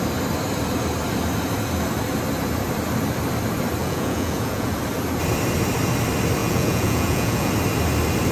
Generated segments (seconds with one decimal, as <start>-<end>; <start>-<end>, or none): 3.8-4.7; 6.4-7.5